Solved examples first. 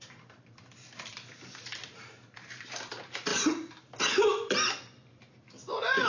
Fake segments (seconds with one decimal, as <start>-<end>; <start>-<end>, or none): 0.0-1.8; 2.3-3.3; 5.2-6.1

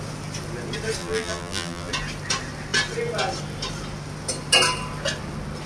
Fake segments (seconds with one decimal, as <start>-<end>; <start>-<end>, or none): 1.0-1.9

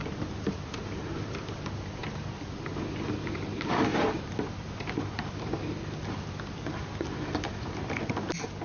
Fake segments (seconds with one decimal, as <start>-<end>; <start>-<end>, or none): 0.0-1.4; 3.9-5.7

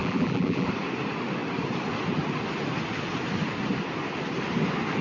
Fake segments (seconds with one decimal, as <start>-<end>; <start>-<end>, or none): 0.0-0.7

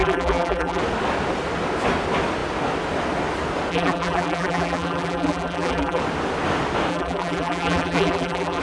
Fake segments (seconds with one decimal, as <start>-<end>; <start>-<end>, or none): 0.0-0.8; 3.7-6.0; 6.9-8.6

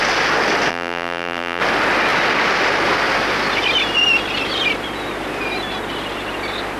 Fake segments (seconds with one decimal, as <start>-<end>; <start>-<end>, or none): 0.7-1.6